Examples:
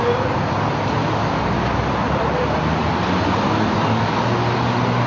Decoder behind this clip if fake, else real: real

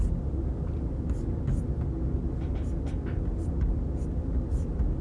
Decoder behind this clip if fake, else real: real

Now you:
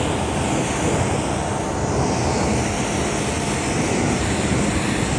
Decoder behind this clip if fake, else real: real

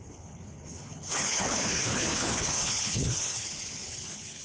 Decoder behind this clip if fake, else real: fake, codec, HILCodec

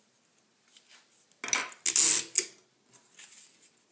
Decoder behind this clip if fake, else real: real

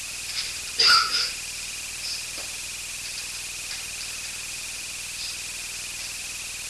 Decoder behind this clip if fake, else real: real